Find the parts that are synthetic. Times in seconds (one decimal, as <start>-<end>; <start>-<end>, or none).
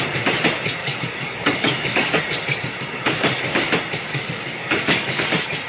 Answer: 0.8-2.2; 4.1-5.2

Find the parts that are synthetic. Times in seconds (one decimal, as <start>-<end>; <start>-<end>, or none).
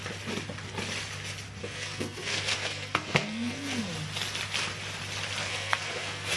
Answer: 1.6-3.9; 5.4-6.4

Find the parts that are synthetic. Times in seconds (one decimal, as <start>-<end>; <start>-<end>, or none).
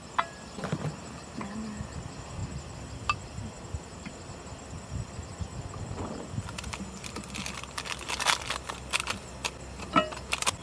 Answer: none